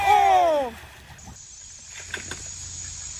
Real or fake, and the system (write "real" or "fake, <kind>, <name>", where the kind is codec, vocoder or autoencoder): real